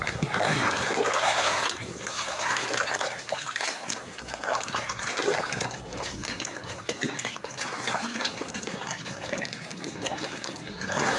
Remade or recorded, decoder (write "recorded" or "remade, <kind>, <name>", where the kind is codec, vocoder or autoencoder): remade, codec, SNAC